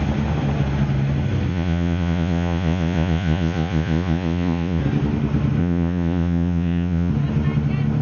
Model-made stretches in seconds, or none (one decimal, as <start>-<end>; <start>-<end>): 1.5-4.8; 5.6-7.1